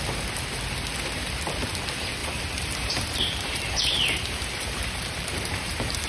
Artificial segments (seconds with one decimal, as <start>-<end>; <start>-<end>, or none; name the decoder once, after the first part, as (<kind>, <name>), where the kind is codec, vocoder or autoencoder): 2.2-6.1 (vocoder, BigVGAN v2)